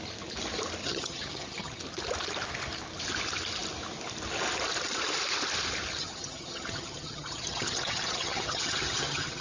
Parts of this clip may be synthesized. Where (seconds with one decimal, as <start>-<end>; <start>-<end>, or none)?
0.8-1.8; 6.0-9.4